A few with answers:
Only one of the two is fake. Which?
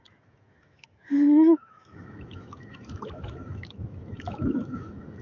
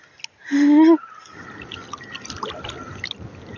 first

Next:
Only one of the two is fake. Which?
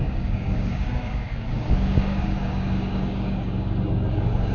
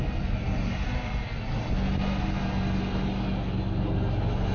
first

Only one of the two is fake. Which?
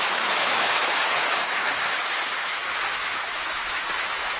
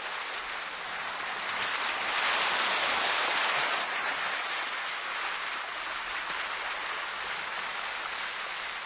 first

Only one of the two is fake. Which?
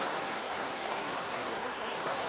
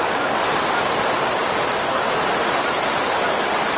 first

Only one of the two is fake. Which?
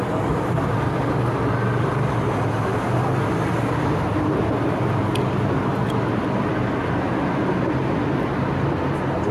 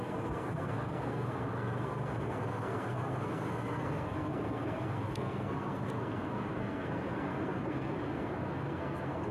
second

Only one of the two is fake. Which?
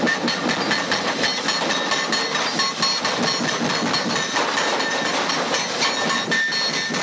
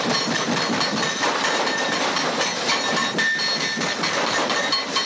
second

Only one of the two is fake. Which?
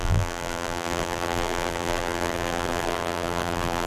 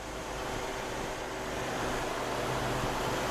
first